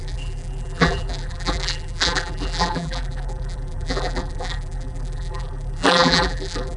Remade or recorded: remade